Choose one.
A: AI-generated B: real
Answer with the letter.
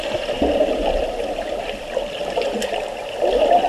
B